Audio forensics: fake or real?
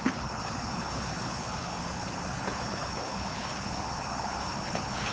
fake